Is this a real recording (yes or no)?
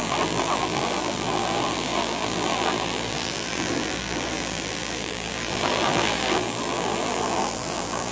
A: no